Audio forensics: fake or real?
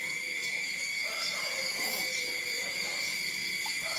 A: fake